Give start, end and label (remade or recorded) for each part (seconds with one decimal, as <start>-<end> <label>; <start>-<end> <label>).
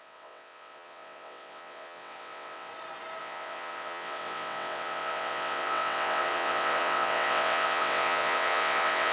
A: 0.0-2.7 remade; 2.7-3.2 recorded; 3.2-9.1 remade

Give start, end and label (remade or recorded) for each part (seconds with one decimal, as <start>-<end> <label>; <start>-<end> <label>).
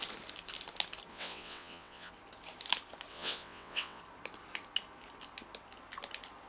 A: 0.0-1.1 recorded; 1.1-2.1 remade; 2.1-3.1 recorded; 3.1-4.0 remade; 4.0-6.5 recorded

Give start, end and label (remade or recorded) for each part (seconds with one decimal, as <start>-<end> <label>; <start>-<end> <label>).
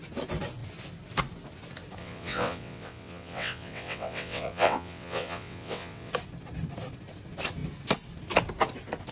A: 0.0-2.0 recorded; 2.0-6.1 remade; 6.1-9.1 recorded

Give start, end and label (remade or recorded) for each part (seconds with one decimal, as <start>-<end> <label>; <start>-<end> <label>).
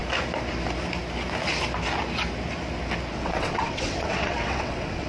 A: 0.0-3.1 recorded; 3.1-5.1 remade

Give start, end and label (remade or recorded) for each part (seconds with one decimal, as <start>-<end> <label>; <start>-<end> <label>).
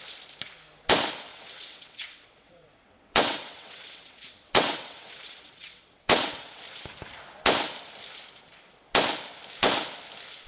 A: 0.0-1.3 recorded; 1.3-6.6 remade; 6.6-10.5 recorded